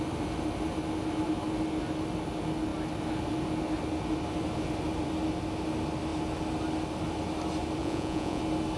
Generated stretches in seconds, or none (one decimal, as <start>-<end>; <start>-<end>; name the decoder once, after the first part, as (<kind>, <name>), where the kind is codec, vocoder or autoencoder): 7.8-8.4 (vocoder, Vocos)